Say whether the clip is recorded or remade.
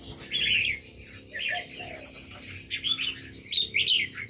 recorded